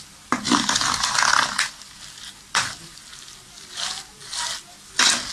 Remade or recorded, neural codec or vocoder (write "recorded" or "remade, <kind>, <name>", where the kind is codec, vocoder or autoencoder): recorded